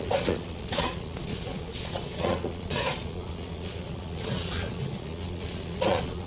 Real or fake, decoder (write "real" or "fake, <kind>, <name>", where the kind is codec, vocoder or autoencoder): fake, vocoder, Vocos